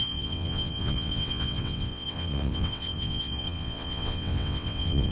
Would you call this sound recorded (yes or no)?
no